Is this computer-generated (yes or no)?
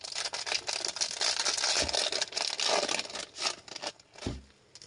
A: no